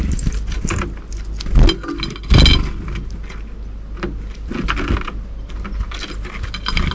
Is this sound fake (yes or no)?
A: no